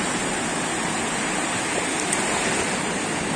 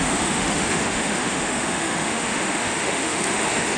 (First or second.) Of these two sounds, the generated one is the second